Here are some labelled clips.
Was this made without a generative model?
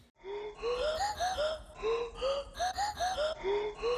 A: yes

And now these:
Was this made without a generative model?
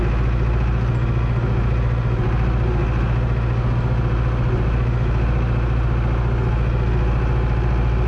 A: yes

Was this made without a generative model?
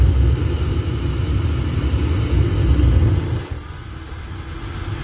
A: yes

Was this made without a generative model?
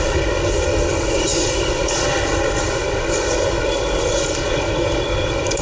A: no